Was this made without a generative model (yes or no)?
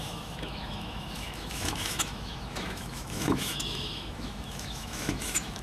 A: no